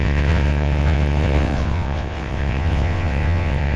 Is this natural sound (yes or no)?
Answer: no